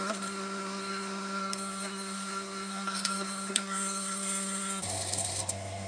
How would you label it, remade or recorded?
remade